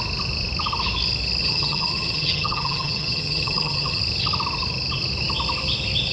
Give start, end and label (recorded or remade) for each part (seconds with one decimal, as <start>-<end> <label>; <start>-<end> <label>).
0.0-1.4 recorded; 1.4-4.0 remade; 4.0-6.1 recorded